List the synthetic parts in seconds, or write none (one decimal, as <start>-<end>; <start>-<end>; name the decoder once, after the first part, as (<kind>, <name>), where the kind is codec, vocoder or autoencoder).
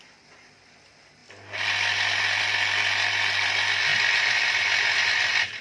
none